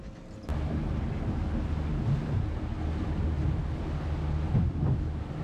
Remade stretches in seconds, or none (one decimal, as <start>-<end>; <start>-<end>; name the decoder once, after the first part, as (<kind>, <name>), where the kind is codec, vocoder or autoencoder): none